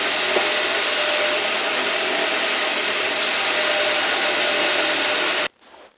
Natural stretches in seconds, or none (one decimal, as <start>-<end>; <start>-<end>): 0.0-6.0